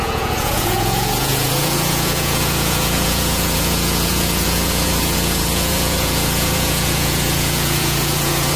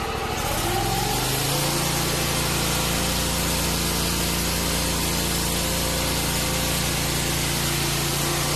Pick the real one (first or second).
second